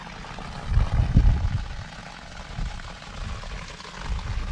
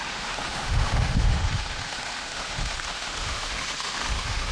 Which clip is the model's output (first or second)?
second